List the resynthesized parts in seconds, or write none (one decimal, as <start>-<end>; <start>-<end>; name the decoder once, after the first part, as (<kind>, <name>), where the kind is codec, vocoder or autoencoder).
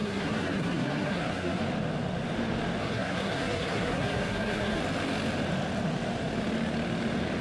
0.0-1.6 (codec, SNAC); 2.8-4.8